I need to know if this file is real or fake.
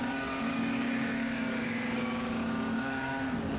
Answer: fake